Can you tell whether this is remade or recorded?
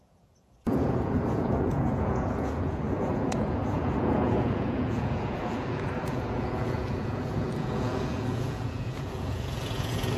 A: remade